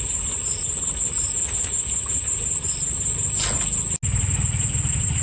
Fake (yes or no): no